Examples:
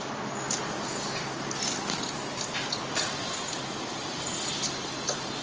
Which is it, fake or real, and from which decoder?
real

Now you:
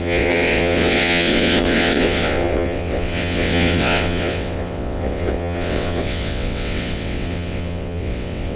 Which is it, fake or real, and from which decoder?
fake, vocoder, WaveNeXt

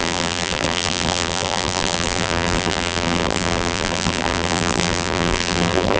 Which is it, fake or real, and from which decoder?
fake, vocoder, BigVGAN v2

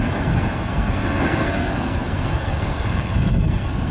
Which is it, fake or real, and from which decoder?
fake, codec, SNAC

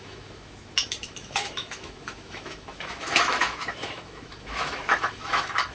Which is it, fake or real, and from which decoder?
fake, autoencoder, DAC-VAE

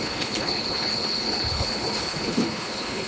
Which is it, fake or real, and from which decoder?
fake, codec, HILCodec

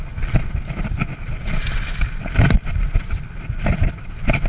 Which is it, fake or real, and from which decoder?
real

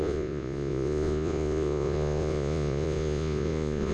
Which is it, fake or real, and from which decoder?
fake, vocoder, Vocos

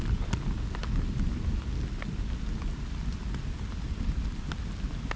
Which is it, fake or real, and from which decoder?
real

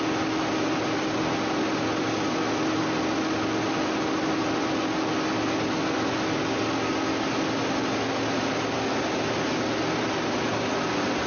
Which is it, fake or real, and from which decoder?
real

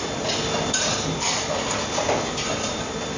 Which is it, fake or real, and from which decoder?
real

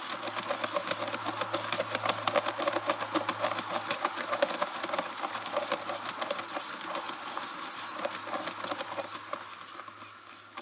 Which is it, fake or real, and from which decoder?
real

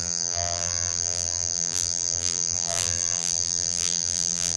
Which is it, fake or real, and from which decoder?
fake, vocoder, BigVGAN v2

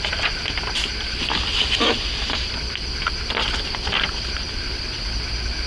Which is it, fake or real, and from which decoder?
real